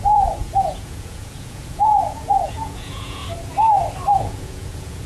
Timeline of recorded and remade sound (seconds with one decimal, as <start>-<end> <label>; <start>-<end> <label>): 0.0-3.2 remade; 3.2-4.2 recorded; 4.2-5.1 remade